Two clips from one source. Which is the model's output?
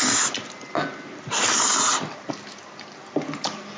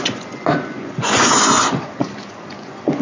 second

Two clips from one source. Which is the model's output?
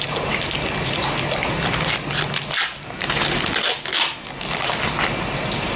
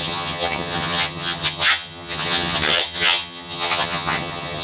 second